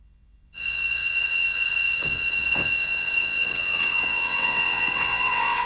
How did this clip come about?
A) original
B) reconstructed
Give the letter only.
B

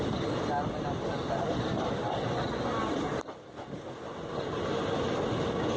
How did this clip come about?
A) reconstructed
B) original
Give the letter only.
B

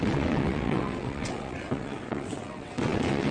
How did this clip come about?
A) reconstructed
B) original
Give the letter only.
A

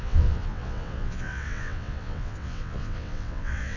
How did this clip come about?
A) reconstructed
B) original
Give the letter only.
A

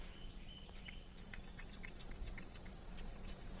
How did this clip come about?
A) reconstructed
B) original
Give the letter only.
A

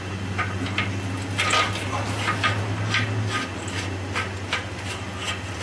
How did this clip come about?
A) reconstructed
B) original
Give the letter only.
B